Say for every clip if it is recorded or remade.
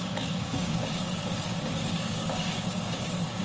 remade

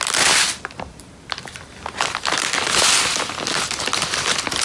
recorded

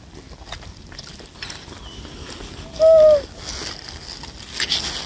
recorded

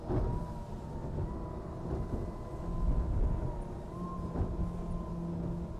recorded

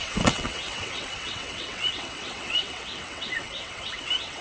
remade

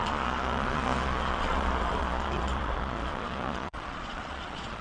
remade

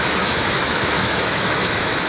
remade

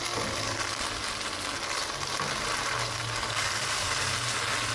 recorded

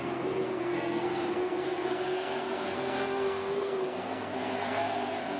remade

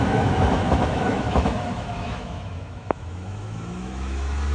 remade